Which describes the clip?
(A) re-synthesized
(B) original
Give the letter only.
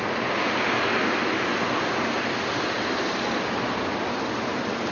B